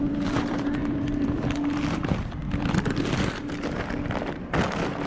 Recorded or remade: remade